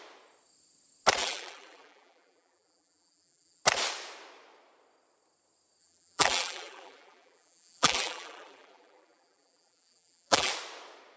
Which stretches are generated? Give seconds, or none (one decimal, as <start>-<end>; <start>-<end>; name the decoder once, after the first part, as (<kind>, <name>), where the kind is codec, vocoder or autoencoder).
1.2-3.6 (vocoder, BigVGAN v2); 5.8-10.5

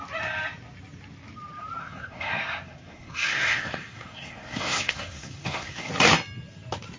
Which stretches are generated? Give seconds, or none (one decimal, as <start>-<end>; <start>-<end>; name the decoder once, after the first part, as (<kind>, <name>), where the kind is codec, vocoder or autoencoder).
1.8-5.9 (codec, SNAC)

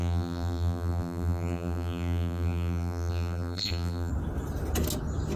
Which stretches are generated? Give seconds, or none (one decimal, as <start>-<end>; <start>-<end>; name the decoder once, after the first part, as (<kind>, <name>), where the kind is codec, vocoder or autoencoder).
0.0-4.1 (vocoder, BigVGAN v2)

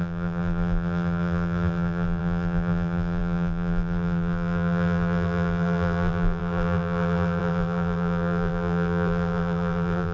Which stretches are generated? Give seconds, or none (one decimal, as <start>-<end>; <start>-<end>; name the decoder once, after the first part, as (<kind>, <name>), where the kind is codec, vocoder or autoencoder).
0.0-10.1 (vocoder, BigVGAN v2)

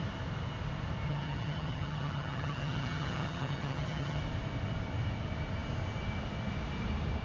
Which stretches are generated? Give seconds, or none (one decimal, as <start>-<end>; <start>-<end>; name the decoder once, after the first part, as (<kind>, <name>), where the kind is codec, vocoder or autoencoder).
1.1-4.2 (vocoder, HiFi-GAN)

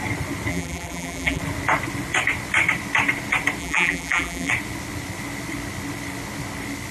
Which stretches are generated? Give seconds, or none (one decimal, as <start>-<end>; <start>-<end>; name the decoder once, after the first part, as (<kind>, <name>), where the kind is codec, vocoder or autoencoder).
0.5-1.4 (vocoder, BigVGAN v2); 3.6-4.5

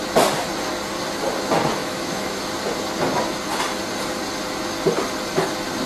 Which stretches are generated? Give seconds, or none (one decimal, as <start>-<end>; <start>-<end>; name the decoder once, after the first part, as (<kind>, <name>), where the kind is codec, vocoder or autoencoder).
1.8-2.4 (autoencoder, DAC-VAE)